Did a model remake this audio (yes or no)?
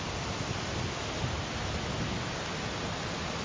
no